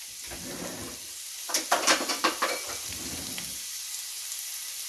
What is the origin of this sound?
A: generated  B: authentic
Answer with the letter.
B